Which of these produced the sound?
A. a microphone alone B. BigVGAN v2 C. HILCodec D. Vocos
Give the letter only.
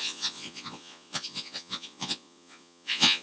D